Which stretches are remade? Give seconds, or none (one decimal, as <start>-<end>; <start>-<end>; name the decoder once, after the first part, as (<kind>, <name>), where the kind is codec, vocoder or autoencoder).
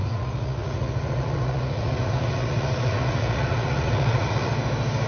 0.0-4.5 (vocoder, Vocos)